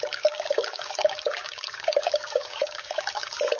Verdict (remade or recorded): remade